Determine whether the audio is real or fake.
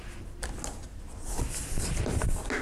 real